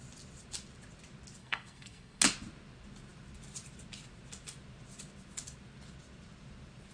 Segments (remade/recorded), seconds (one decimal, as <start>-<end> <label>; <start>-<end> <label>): 0.0-1.4 recorded; 1.4-2.2 remade; 2.2-6.9 recorded